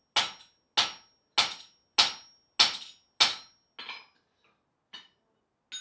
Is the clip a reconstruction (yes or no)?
no